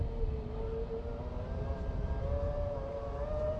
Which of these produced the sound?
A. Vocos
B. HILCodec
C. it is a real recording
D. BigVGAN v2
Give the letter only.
C